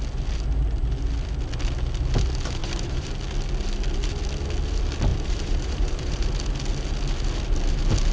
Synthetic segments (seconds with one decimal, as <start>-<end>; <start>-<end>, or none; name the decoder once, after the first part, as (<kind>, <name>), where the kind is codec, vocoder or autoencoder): 2.6-3.1 (vocoder, BigVGAN v2); 5.1-6.2